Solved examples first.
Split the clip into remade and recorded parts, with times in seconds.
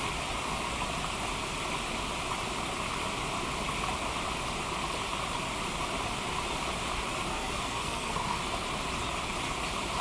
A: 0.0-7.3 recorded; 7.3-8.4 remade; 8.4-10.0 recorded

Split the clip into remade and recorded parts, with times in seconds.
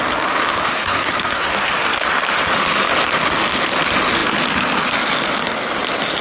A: 0.0-0.7 recorded; 0.7-1.5 remade; 1.5-6.2 recorded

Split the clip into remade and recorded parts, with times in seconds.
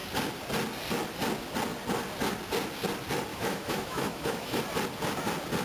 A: 0.0-3.3 recorded; 3.3-4.6 remade; 4.6-5.6 recorded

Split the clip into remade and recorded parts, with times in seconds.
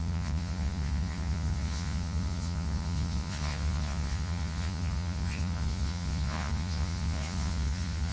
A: 0.0-8.1 remade